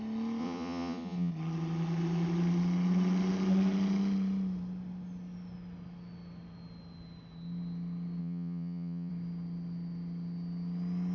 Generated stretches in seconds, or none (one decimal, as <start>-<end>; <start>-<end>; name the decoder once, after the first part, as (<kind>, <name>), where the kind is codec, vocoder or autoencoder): 0.4-1.3 (vocoder, Vocos); 8.2-9.1

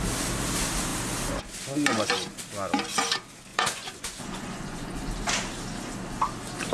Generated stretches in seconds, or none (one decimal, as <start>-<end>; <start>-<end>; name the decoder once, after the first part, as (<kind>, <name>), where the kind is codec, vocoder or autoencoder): 3.5-5.0 (vocoder, Vocos)

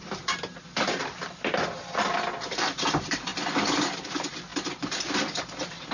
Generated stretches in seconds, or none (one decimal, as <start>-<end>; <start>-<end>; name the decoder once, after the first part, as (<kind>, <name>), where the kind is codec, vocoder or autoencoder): none

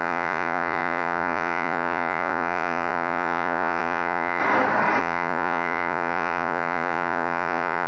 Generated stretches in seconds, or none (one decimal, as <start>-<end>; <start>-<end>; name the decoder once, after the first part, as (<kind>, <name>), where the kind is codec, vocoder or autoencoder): 0.0-4.4 (vocoder, Vocos); 5.0-7.9

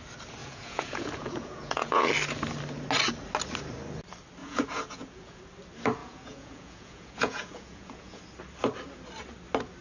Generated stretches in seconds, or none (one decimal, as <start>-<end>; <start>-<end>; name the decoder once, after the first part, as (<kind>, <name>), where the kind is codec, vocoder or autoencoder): 0.4-2.1 (vocoder, Vocos); 4.4-5.4; 6.0-8.2

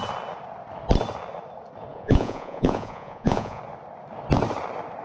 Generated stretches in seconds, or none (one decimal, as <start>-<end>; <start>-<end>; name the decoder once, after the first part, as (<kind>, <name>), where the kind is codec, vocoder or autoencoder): 1.9-3.6 (vocoder, Vocos)